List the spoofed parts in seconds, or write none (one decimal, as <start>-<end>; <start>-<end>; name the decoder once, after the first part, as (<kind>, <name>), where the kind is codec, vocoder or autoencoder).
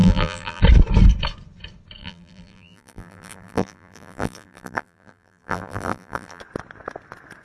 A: 0.0-0.6 (vocoder, BigVGAN v2); 2.0-6.4